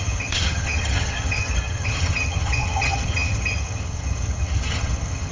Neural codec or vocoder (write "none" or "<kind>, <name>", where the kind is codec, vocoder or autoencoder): vocoder, HiFi-GAN